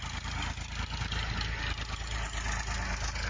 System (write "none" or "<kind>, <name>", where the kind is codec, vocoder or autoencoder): none